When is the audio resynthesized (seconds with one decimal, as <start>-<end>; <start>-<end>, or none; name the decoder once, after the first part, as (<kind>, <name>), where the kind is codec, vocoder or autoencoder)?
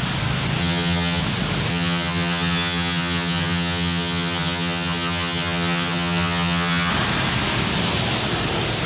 0.6-1.2 (vocoder, HiFi-GAN); 1.7-6.9